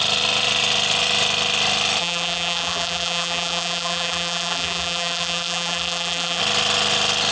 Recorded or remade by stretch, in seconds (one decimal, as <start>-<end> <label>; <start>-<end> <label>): 0.0-2.0 recorded; 2.0-6.4 remade; 6.4-7.3 recorded